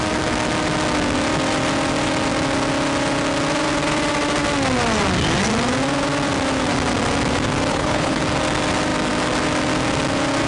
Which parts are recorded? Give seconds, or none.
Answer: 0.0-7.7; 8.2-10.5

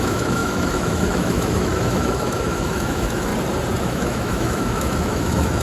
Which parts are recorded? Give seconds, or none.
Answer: 3.3-3.8